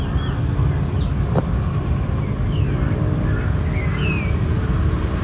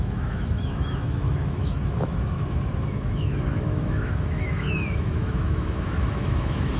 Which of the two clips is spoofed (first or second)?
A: second